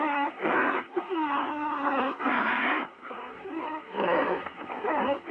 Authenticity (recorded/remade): remade